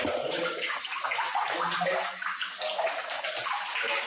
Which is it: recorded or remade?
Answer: recorded